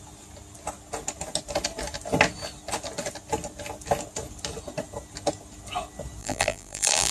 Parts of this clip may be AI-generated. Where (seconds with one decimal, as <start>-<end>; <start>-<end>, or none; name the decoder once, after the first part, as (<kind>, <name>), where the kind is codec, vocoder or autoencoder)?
6.2-7.1 (vocoder, BigVGAN v2)